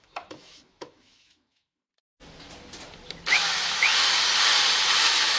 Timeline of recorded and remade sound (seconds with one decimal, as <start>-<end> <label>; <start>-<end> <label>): 0.0-1.9 remade; 1.9-3.3 recorded; 3.3-3.9 remade; 3.9-5.0 recorded; 5.0-5.4 remade